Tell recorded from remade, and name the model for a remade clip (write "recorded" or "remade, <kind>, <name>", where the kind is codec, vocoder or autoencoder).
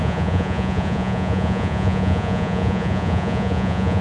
remade, vocoder, Vocos